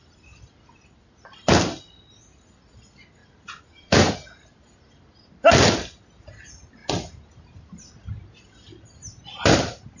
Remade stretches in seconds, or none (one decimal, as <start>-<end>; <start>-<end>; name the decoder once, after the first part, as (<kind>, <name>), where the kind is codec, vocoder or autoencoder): 3.2-4.1 (vocoder, Vocos)